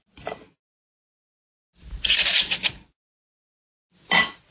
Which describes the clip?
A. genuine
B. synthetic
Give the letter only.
A